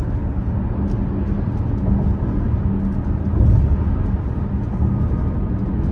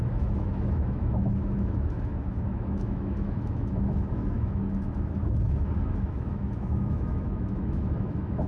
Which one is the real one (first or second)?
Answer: first